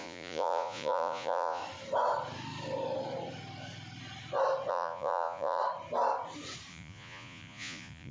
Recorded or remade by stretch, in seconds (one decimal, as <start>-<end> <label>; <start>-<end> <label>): 0.0-1.6 remade; 1.6-4.7 recorded; 4.7-5.6 remade; 5.6-6.7 recorded; 6.7-8.1 remade